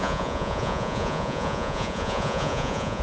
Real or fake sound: fake